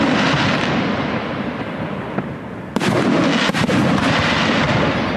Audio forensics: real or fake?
real